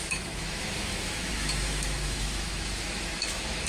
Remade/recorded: remade